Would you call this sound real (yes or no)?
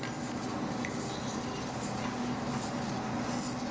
yes